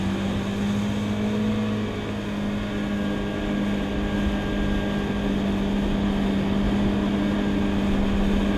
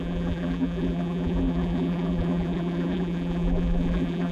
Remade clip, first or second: second